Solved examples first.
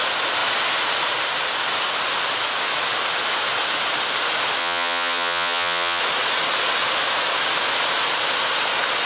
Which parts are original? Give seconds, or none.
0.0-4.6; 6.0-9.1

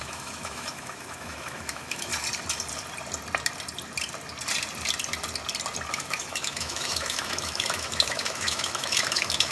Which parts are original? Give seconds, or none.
2.1-5.9